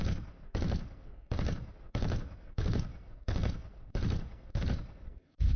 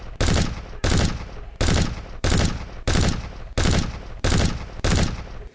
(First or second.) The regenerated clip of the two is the first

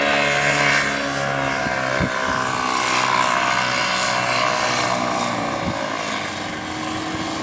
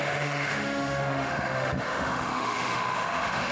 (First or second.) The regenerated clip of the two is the second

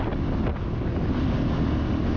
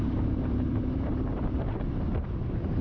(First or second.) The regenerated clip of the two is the second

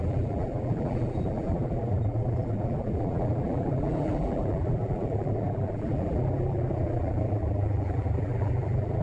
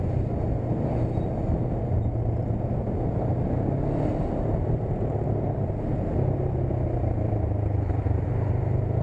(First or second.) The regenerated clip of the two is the first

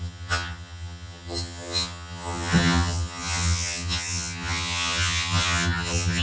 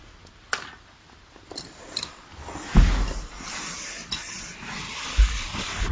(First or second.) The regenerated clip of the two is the first